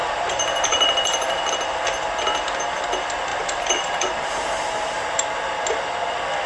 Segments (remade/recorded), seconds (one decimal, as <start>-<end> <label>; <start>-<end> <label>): 0.0-1.5 remade; 1.5-3.3 recorded; 3.3-5.2 remade; 5.2-6.5 recorded